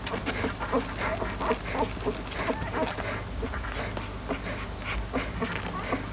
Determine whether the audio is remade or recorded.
recorded